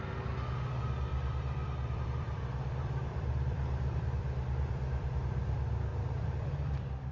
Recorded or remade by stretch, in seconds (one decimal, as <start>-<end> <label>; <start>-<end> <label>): 0.0-1.1 recorded; 1.1-5.2 remade; 5.2-5.9 recorded; 5.9-7.1 remade